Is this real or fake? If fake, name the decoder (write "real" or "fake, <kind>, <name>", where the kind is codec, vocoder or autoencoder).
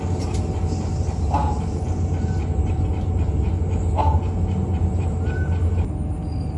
real